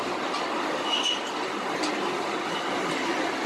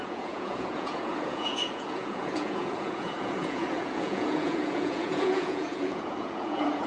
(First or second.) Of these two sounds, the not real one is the second